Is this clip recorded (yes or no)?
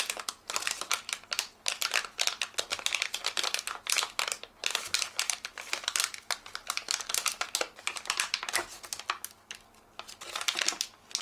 yes